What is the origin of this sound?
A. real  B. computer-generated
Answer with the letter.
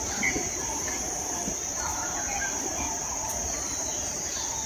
A